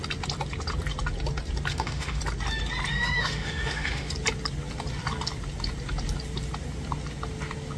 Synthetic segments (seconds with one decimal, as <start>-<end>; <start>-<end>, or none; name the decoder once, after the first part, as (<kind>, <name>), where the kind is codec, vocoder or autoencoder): 1.7-2.2 (autoencoder, DAC-VAE); 2.9-4.1